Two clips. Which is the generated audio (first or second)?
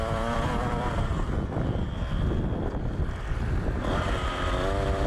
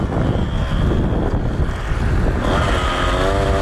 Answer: first